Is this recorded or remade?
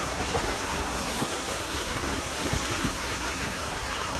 remade